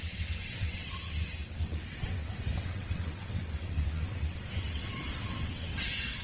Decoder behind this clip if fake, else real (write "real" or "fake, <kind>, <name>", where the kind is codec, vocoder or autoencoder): fake, vocoder, WaveNeXt